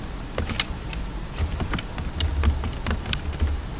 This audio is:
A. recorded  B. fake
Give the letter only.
A